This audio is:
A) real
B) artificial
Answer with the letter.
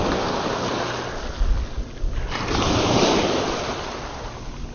A